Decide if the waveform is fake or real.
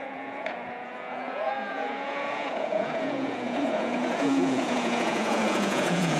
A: fake